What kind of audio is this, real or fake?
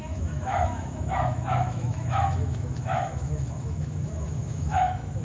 fake